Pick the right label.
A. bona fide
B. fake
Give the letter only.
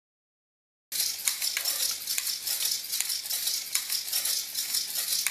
A